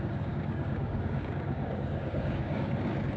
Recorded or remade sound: remade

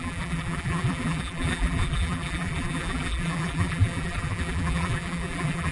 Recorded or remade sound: remade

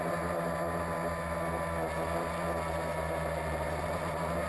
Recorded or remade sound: recorded